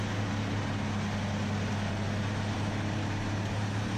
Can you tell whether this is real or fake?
real